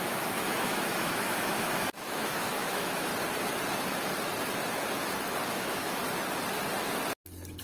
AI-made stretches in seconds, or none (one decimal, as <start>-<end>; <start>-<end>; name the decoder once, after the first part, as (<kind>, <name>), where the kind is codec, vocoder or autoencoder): 0.0-3.1 (autoencoder, DAC-VAE); 5.5-6.0

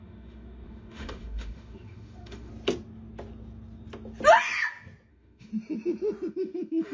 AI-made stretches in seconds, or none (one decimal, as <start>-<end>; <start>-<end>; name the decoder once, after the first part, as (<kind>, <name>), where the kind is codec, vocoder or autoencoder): 0.0-2.5 (autoencoder, DAC-VAE); 5.1-5.5; 6.3-6.9

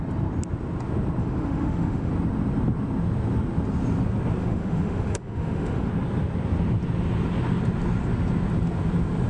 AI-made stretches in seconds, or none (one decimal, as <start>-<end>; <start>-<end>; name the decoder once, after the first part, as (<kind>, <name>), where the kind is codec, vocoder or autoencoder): 1.2-2.1 (autoencoder, DAC-VAE); 4.4-5.9